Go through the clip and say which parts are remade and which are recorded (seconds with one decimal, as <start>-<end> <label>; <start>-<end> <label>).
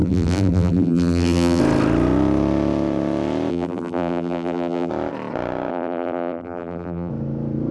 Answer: 0.0-1.6 remade; 1.6-3.5 recorded; 3.5-4.9 remade; 4.9-5.7 recorded; 5.7-7.1 remade; 7.1-7.7 recorded